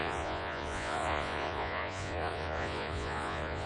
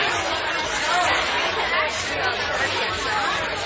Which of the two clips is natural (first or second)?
second